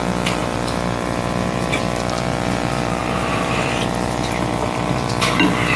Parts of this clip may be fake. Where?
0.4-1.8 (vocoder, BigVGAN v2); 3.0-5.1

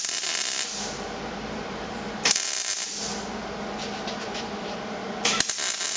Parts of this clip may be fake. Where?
0.0-2.7 (vocoder, BigVGAN v2); 5.5-6.0

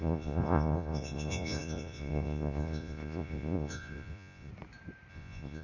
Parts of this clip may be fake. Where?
0.0-4.5 (vocoder, Vocos); 5.1-5.6

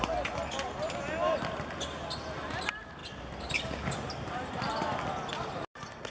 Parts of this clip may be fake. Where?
none

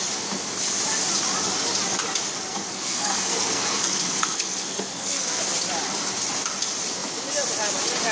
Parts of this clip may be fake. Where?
2.5-5.4 (codec, SNAC)

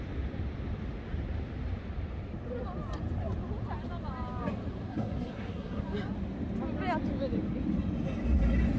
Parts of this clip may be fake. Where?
4.9-5.8 (codec, SNAC)